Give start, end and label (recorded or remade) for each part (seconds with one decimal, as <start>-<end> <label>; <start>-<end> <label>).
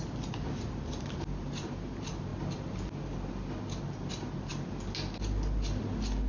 0.0-6.3 recorded